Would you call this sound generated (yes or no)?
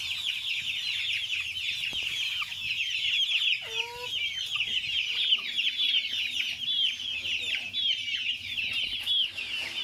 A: no